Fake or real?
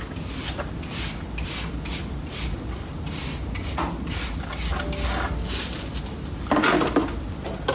real